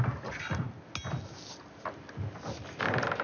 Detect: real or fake real